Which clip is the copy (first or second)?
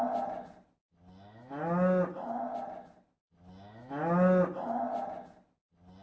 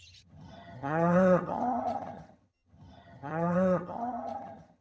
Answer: second